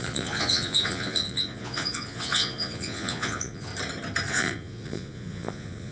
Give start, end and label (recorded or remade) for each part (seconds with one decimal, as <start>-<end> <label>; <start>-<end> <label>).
0.0-3.7 remade; 3.7-4.3 recorded; 4.3-5.9 remade